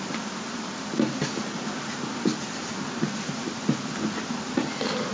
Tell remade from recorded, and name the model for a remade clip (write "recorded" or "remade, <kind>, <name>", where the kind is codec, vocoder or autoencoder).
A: recorded